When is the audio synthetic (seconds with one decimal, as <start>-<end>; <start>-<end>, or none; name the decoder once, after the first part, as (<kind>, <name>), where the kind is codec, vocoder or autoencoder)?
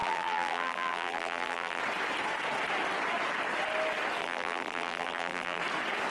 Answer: 0.0-1.8 (vocoder, BigVGAN v2); 4.2-5.6